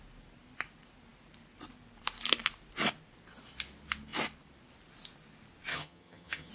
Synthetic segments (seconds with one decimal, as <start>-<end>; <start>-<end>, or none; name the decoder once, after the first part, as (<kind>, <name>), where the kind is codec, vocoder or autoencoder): 5.7-6.5 (vocoder, HiFi-GAN)